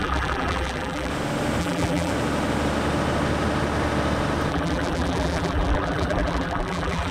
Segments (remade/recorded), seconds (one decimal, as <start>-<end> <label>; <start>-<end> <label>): 0.0-1.1 remade; 1.1-1.6 recorded; 1.6-2.1 remade; 2.1-4.5 recorded; 4.5-7.1 remade